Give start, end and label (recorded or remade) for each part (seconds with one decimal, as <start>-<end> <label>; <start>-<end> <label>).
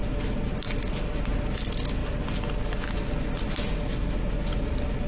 0.0-5.1 recorded